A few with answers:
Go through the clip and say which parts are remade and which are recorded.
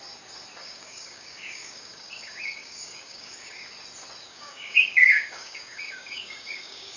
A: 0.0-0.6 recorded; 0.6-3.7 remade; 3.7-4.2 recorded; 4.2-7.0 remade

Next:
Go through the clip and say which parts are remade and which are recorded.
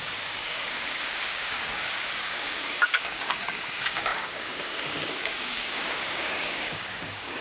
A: 0.0-7.4 remade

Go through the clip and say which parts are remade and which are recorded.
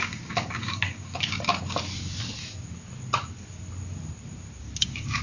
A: 0.0-1.5 remade; 1.5-4.6 recorded; 4.6-5.2 remade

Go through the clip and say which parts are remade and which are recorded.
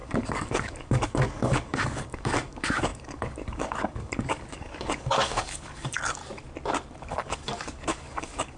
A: 0.0-6.2 remade; 6.2-7.0 recorded; 7.0-8.6 remade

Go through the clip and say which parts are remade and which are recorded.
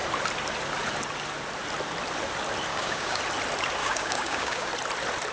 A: 0.0-2.7 recorded; 2.7-3.2 remade; 3.2-3.8 recorded; 3.8-4.7 remade; 4.7-5.3 recorded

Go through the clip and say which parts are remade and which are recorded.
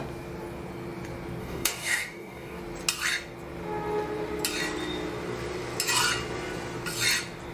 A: 0.0-1.4 recorded; 1.4-2.6 remade; 2.6-7.5 recorded